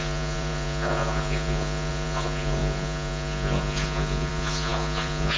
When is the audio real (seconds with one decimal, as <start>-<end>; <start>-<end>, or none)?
none